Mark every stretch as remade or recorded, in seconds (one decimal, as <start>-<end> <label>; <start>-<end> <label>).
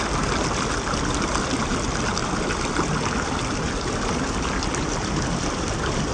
0.0-6.1 recorded